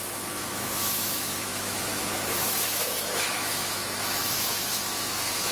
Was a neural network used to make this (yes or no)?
yes